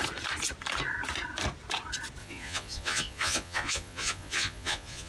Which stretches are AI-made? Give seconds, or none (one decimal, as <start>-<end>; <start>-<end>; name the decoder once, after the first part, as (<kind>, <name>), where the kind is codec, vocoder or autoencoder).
2.2-5.1 (vocoder, Vocos)